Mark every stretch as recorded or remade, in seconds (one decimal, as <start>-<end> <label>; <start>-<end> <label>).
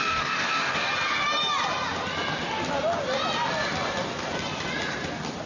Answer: 0.0-0.9 remade; 0.9-5.5 recorded